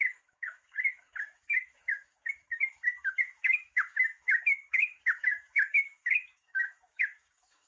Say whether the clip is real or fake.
fake